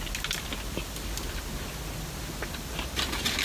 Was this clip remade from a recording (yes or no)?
no